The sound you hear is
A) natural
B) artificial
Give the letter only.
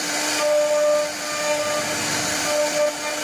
A